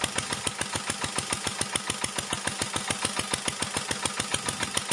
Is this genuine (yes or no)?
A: yes